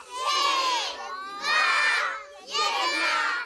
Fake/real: real